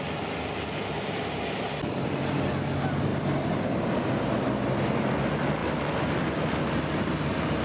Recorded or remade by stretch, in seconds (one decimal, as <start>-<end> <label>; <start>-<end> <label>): 0.0-7.6 recorded